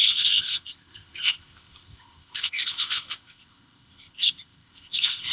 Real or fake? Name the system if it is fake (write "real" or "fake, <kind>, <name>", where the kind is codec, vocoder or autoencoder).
fake, codec, ZipCodec